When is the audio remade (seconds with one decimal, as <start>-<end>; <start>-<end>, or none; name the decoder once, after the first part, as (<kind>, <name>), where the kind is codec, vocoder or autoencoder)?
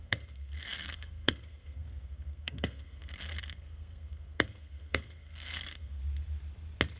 0.0-6.0 (codec, SNAC)